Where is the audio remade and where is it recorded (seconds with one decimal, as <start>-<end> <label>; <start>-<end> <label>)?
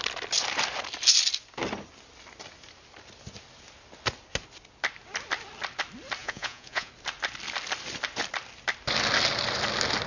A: 0.0-6.2 recorded; 6.2-6.9 remade; 6.9-10.1 recorded